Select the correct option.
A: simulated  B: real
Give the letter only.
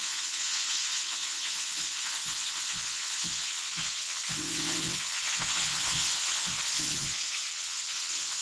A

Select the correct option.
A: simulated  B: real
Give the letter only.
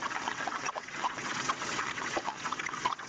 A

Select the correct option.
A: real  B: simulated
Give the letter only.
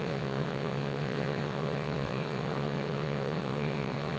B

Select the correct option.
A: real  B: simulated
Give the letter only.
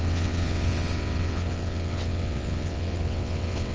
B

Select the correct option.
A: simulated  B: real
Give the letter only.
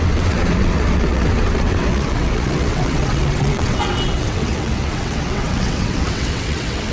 A